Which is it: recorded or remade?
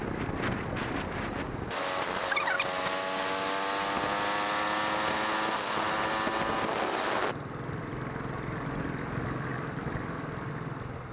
recorded